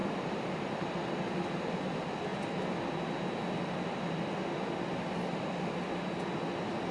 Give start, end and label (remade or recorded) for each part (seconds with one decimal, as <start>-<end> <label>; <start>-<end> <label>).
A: 0.0-0.8 remade; 0.8-6.9 recorded